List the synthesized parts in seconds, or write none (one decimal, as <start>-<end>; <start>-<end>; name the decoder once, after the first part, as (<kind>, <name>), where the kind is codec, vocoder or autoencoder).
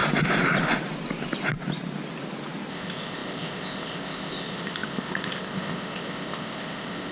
2.7-7.1 (codec, ZipCodec)